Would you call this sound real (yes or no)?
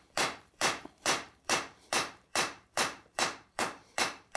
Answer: no